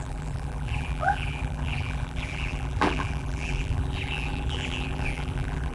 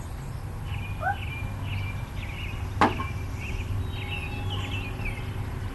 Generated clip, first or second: first